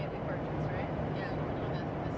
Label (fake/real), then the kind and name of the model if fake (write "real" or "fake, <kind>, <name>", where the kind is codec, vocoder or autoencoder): real